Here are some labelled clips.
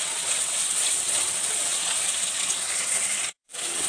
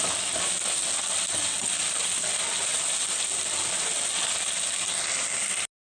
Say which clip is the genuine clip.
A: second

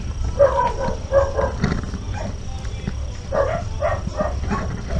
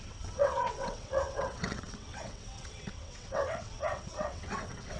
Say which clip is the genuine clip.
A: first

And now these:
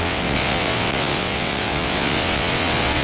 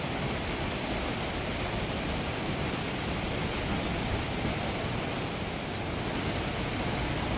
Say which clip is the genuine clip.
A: second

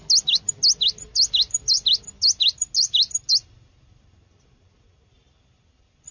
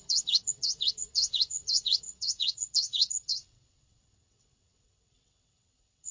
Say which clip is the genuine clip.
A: first